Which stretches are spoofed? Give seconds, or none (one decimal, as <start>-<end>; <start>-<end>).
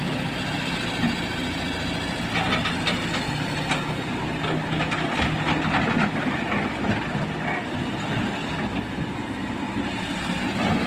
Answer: none